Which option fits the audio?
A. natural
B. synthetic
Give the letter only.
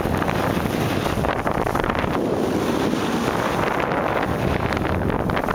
B